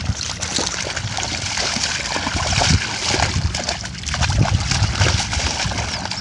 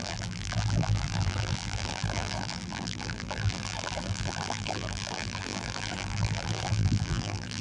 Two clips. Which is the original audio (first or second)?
first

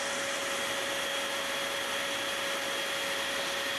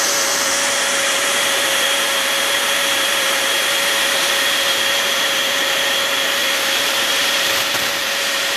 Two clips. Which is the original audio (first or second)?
first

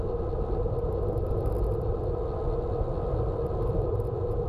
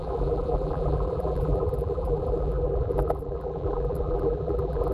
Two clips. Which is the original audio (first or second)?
first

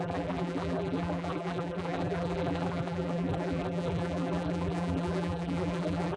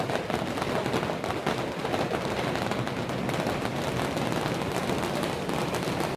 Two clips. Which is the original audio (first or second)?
second